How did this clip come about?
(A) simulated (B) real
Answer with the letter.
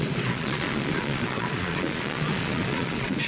A